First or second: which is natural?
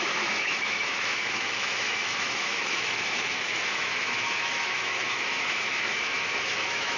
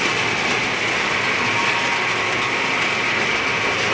second